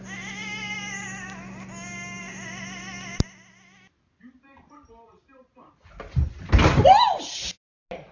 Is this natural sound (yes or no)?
yes